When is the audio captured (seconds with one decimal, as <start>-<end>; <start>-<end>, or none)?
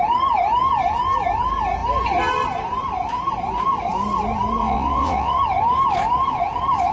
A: 0.0-4.6; 5.4-6.9